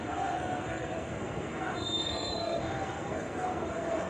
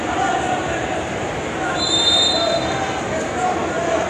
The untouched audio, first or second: second